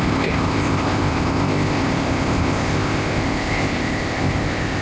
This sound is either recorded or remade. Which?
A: remade